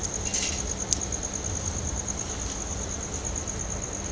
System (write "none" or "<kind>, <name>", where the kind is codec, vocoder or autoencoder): none